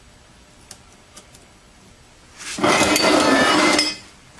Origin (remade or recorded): recorded